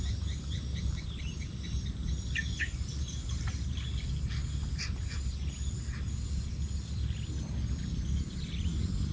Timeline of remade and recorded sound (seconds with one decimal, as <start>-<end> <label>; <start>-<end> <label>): 0.0-9.1 recorded